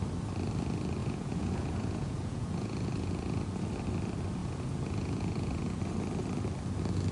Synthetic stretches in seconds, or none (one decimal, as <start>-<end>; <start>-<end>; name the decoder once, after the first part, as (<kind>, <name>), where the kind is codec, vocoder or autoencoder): 1.0-3.6 (vocoder, Vocos); 4.4-5.8